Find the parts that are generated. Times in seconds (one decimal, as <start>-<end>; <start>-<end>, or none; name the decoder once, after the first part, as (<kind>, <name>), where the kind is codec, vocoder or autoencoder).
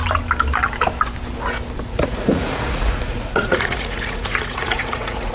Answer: 1.9-5.3 (vocoder, Vocos)